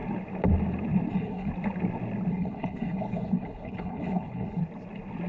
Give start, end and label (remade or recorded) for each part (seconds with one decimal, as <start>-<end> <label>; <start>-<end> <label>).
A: 0.0-1.1 recorded; 1.1-1.5 remade; 1.5-2.3 recorded; 2.3-4.6 remade; 4.6-5.3 recorded

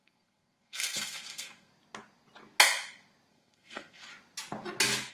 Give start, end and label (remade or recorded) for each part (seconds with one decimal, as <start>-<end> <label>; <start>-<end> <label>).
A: 0.0-1.7 remade; 1.7-3.3 recorded; 3.3-4.1 remade; 4.1-5.1 recorded

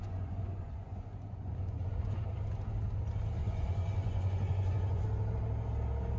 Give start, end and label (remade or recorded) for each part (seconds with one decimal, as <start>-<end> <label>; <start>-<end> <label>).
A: 0.0-2.2 remade; 2.2-3.4 recorded; 3.4-5.0 remade; 5.0-6.2 recorded

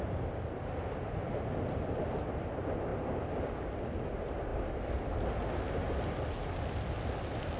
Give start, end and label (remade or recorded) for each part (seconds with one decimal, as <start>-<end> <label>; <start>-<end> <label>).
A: 0.0-7.6 recorded

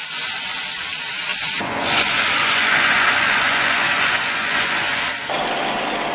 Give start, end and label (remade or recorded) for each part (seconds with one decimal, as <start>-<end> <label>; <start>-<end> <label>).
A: 0.0-0.8 remade; 0.8-1.3 recorded; 1.3-5.0 remade; 5.0-6.1 recorded

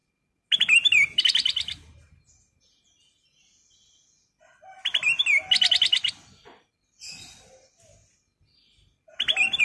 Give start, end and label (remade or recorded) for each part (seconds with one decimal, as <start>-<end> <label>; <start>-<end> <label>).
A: 0.0-9.6 recorded

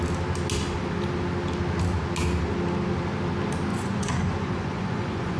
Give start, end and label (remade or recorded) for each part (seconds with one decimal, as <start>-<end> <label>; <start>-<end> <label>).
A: 0.0-3.7 recorded; 3.7-5.4 remade